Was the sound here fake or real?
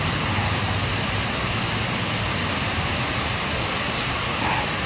real